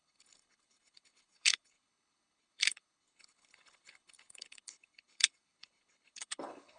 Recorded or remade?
remade